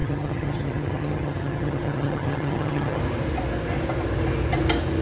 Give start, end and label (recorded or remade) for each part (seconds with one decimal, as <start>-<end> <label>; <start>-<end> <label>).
0.0-3.0 remade; 3.0-5.0 recorded